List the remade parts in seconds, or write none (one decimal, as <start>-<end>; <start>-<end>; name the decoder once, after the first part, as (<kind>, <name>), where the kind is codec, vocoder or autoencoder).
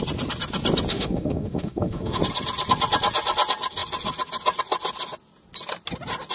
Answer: 0.9-2.2 (autoencoder, DAC-VAE)